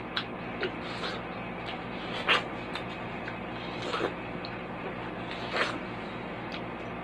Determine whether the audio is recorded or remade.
recorded